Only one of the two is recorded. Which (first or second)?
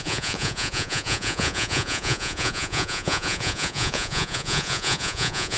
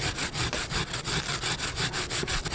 second